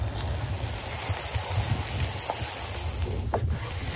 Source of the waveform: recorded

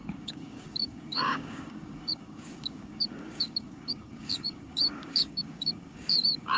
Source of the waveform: remade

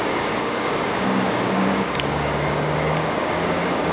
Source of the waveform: remade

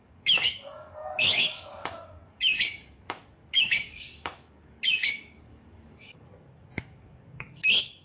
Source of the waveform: remade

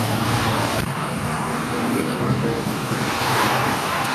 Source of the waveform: remade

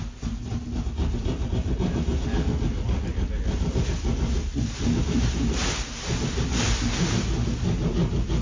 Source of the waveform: recorded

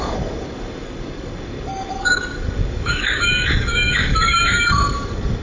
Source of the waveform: remade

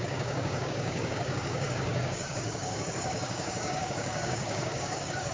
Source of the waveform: remade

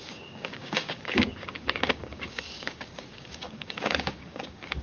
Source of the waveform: remade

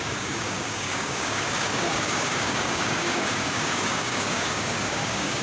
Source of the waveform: remade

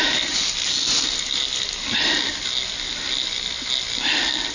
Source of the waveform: recorded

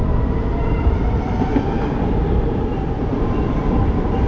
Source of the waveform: recorded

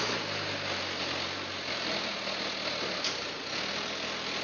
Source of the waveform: recorded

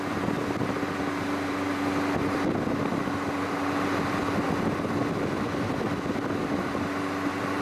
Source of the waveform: recorded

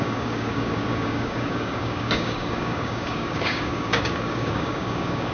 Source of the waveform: remade